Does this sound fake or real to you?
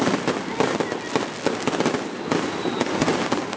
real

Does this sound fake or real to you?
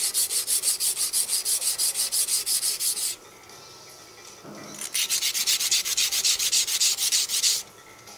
real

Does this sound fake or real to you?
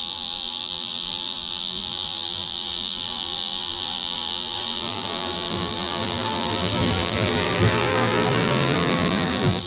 fake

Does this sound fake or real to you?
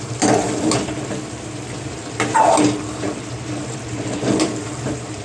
fake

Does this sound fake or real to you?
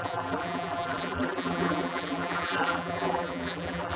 fake